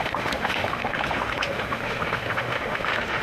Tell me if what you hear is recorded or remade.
remade